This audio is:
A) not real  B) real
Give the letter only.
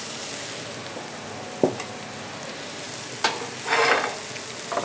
B